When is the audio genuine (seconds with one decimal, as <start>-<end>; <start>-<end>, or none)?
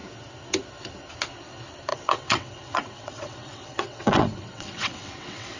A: 0.0-1.9